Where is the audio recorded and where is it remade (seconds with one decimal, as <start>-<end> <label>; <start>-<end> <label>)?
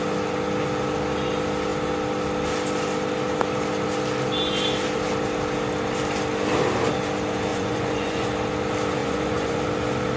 0.0-7.5 recorded; 7.5-8.3 remade; 8.3-9.0 recorded; 9.0-9.6 remade; 9.6-10.2 recorded